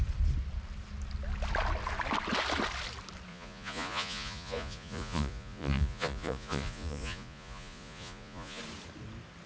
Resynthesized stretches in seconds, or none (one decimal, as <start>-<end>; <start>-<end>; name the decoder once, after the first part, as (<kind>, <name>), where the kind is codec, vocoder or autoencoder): 3.3-8.6 (vocoder, Vocos)